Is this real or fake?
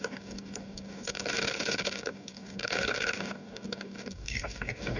fake